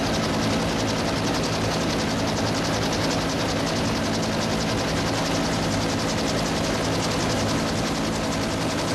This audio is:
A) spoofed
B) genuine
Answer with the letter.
B